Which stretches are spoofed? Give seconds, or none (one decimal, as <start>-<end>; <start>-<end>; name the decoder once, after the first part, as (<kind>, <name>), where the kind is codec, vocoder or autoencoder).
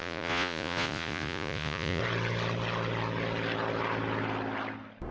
0.0-2.0 (vocoder, Vocos)